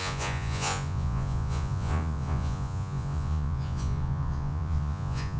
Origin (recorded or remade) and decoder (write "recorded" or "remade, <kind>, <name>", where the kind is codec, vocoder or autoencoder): remade, vocoder, Vocos